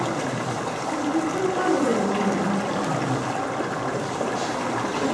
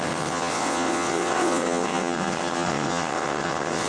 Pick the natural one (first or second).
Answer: first